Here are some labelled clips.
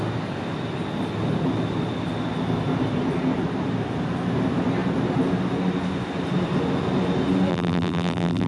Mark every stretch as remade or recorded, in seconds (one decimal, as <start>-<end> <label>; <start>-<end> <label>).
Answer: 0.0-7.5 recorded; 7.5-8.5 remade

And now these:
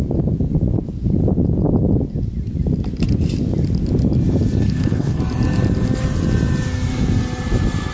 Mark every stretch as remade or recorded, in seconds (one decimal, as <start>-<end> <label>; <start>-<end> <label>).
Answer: 0.0-4.6 recorded; 4.6-5.2 remade; 5.2-7.9 recorded

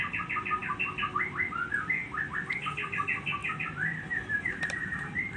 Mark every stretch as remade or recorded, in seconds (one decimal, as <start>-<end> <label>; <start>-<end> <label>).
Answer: 0.0-3.4 recorded; 3.4-5.4 remade

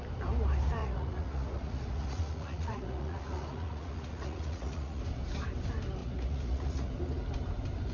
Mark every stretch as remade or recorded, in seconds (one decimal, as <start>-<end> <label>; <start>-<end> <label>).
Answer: 0.0-0.8 recorded; 0.8-5.0 remade; 5.0-6.0 recorded; 6.0-6.9 remade; 6.9-7.9 recorded